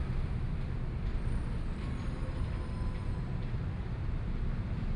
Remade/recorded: recorded